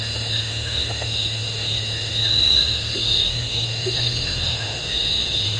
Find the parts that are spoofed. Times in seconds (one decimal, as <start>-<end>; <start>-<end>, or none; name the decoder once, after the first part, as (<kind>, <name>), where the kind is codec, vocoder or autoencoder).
0.0-5.6 (autoencoder, DAC-VAE)